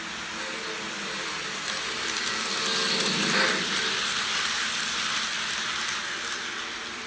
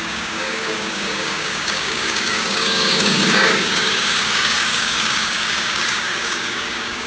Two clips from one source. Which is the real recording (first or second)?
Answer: first